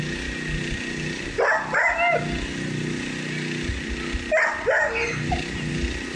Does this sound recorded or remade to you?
recorded